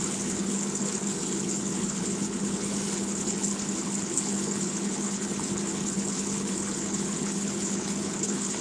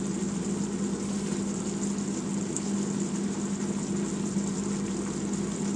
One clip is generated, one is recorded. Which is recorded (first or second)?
second